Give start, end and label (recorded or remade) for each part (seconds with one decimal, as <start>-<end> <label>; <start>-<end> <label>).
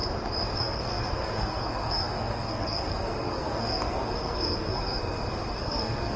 0.0-0.6 recorded; 0.6-6.2 remade